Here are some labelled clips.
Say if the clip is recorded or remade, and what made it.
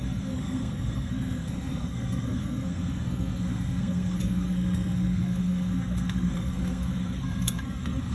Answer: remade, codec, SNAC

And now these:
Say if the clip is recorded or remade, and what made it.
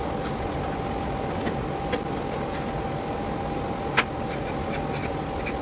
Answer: recorded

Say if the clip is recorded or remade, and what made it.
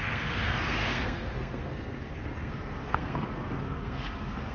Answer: remade, codec, SNAC